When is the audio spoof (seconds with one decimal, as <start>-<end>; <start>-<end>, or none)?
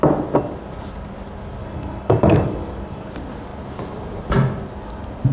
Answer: 1.6-3.1